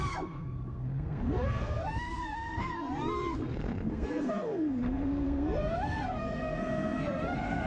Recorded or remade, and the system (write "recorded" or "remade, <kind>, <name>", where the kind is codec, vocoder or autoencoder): remade, codec, SNAC